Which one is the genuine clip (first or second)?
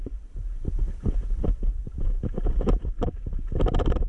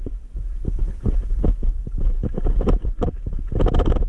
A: second